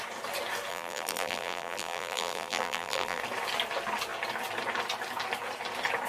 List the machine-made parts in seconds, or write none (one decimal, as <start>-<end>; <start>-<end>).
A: 0.7-3.2